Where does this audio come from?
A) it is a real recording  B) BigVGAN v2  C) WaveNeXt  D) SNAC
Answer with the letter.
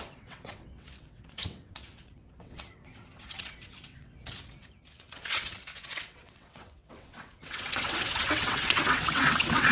C